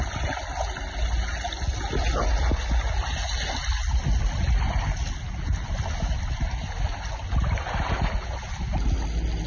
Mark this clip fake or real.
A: real